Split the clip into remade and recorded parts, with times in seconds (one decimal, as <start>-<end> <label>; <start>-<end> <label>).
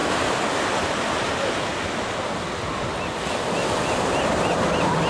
0.0-5.1 recorded